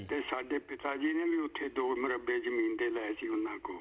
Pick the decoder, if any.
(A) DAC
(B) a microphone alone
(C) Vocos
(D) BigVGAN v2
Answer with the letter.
B